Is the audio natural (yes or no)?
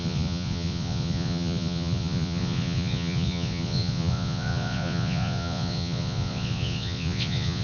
no